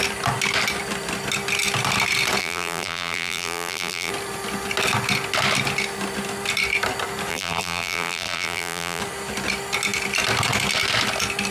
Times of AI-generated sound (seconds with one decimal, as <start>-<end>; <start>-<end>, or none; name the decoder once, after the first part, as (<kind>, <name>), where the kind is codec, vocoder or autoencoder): 2.4-4.1 (vocoder, BigVGAN v2); 7.3-9.0